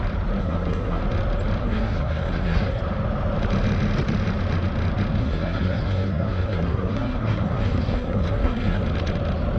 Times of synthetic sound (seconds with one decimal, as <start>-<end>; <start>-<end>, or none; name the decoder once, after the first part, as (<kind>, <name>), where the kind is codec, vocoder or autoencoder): 0.4-1.0 (codec, SNAC); 1.6-2.8; 5.2-8.8